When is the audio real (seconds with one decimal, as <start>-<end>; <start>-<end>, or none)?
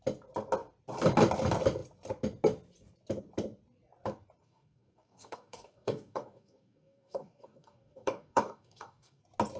0.0-4.4; 9.2-9.6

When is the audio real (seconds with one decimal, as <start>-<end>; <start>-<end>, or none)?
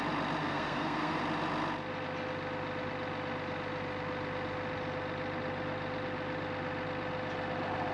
0.0-0.4; 1.2-7.9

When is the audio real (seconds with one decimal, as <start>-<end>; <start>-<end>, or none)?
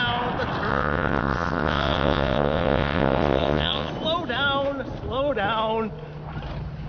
0.0-0.7; 3.9-6.9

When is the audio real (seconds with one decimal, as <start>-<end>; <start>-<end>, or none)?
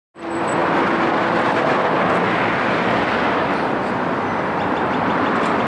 0.0-5.7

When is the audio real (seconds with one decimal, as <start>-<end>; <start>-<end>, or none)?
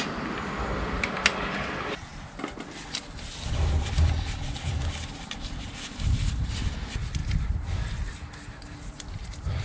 0.0-9.6